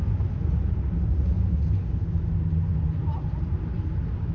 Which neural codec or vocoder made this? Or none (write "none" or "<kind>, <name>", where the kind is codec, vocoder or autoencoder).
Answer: none